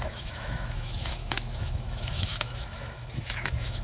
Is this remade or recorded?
remade